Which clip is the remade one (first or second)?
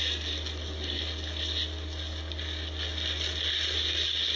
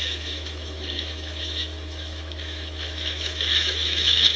second